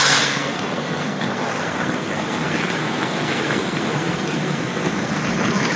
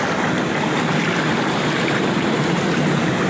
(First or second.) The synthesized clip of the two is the first